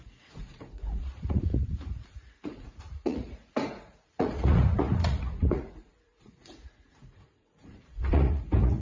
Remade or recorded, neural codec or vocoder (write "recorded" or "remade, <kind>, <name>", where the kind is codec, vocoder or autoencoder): remade, vocoder, Vocos